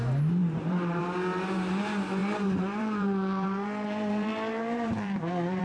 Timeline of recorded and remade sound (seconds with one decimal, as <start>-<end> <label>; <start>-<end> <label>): 0.0-0.4 recorded; 0.4-1.0 remade; 1.0-2.2 recorded; 2.2-5.6 remade